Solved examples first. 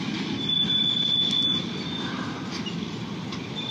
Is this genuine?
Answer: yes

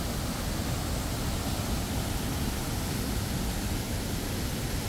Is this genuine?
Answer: yes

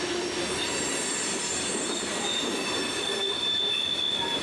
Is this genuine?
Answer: yes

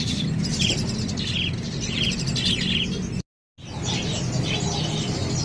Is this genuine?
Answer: yes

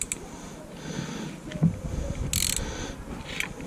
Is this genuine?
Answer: yes